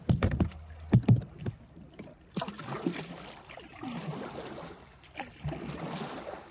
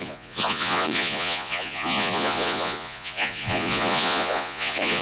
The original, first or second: first